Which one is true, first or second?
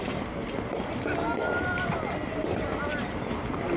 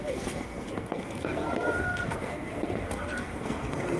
first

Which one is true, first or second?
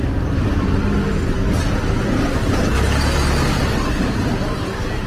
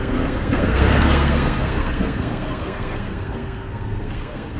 first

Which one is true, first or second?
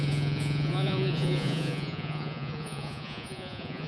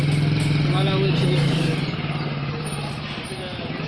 second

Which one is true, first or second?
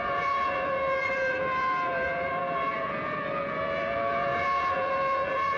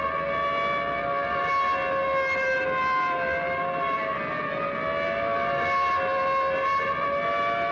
second